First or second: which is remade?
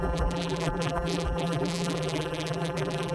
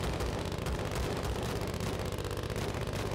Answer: first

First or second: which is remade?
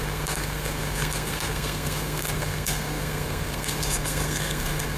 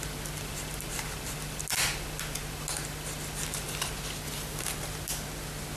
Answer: first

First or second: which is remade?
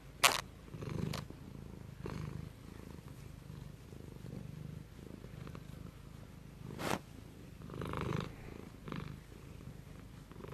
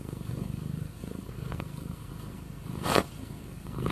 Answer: second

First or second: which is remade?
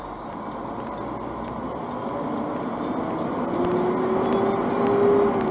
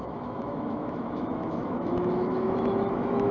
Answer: second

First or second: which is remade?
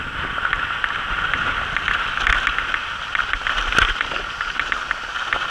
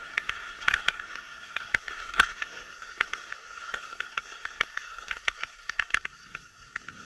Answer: second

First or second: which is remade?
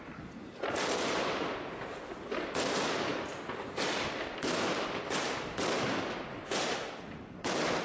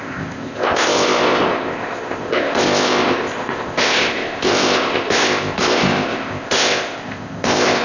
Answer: second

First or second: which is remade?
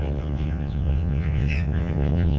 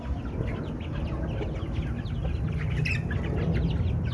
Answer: first